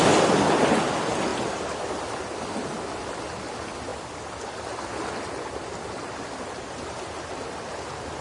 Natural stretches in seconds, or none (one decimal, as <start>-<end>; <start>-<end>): 0.0-8.2